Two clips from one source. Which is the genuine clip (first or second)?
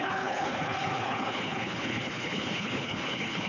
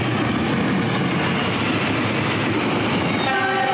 second